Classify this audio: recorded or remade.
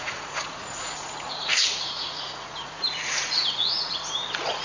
remade